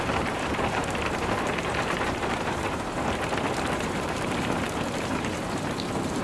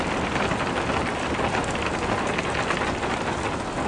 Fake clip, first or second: first